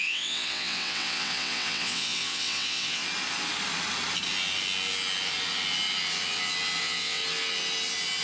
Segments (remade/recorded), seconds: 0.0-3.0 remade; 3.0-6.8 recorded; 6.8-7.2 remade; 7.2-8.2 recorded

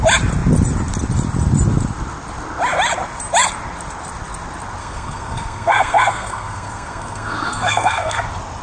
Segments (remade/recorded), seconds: 0.0-4.8 recorded; 4.8-8.2 remade; 8.2-8.6 recorded

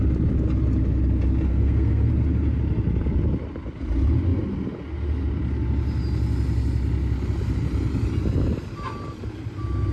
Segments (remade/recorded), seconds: 0.0-1.5 recorded; 1.5-2.1 remade; 2.1-9.9 recorded

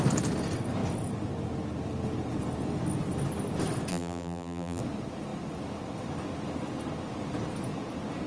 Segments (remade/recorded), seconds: 0.0-3.9 recorded; 3.9-4.8 remade; 4.8-8.3 recorded

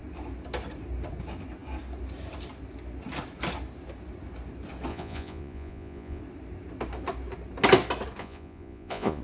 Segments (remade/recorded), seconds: 0.0-4.9 recorded; 4.9-6.2 remade; 6.2-8.2 recorded; 8.2-9.2 remade

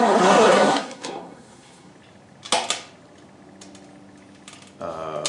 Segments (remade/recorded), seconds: 0.0-1.9 remade; 1.9-5.3 recorded

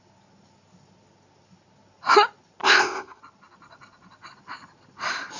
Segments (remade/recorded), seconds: 0.0-2.6 recorded; 2.6-3.2 remade; 3.2-5.4 recorded

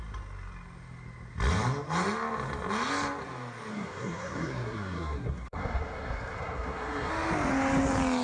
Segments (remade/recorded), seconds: 0.0-3.7 recorded; 3.7-7.1 remade; 7.1-8.2 recorded